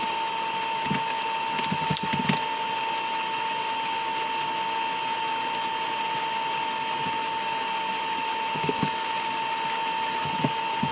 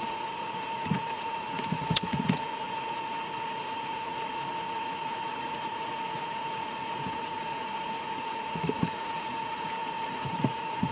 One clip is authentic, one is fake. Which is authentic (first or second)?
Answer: first